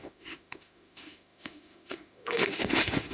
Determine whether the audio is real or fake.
fake